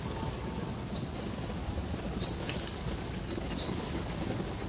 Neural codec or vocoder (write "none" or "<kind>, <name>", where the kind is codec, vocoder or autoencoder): none